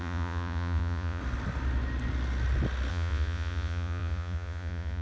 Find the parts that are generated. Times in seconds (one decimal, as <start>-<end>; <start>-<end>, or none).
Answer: 0.0-1.2; 2.9-5.0